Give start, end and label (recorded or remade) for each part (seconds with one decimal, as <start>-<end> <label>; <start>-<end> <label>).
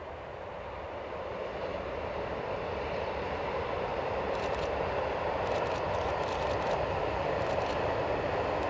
0.0-3.9 recorded; 3.9-6.4 remade; 6.4-8.7 recorded